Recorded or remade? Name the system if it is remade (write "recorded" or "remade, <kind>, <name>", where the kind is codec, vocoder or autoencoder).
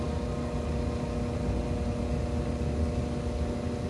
recorded